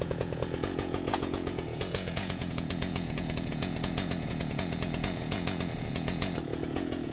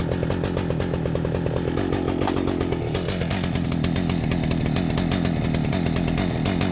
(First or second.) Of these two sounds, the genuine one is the second